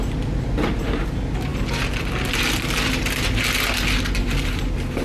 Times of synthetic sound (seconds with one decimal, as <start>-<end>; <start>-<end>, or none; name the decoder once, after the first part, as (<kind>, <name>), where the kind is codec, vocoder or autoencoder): none